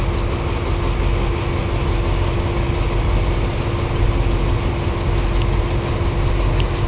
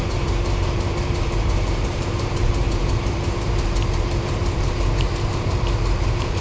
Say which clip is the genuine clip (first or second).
first